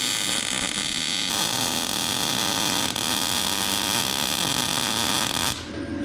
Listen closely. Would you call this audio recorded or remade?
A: recorded